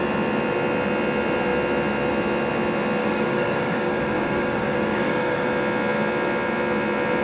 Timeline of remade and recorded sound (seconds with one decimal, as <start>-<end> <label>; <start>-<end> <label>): 0.0-3.0 recorded; 3.0-5.5 remade; 5.5-7.2 recorded